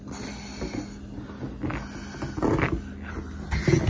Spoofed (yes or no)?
no